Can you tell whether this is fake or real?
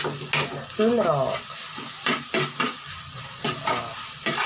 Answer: real